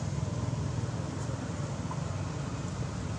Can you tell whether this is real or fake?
real